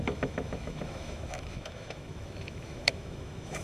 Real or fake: fake